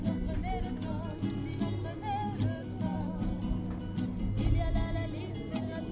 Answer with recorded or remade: recorded